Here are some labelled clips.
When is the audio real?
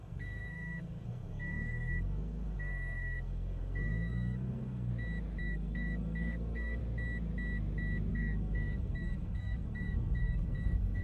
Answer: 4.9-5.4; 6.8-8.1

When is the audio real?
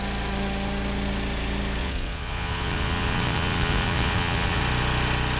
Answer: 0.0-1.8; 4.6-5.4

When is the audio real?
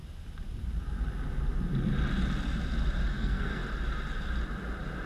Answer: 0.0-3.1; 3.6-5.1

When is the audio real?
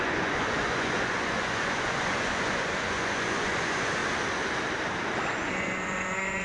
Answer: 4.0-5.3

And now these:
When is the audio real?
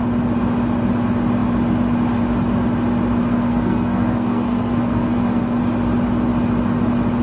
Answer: 0.0-3.2; 5.6-7.2